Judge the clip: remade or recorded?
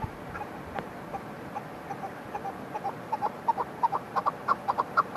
recorded